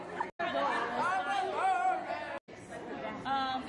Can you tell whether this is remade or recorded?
recorded